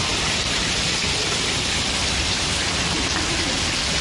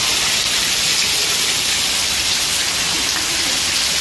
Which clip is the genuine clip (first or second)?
second